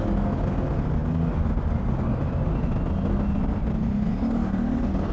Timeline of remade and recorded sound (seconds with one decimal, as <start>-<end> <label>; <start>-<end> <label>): 0.0-5.1 recorded